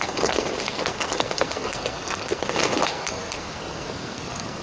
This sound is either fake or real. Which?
fake